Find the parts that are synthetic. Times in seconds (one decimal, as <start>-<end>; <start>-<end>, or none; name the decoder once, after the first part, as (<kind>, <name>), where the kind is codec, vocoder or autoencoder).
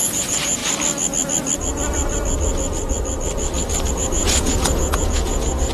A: 0.0-0.6 (vocoder, Vocos); 3.9-5.7